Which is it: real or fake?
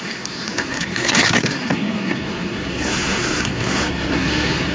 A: fake